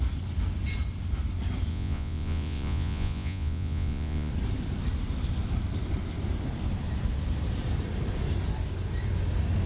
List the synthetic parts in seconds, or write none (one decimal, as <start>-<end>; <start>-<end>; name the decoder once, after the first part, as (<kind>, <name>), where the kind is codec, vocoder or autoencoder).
1.7-4.3 (vocoder, Vocos)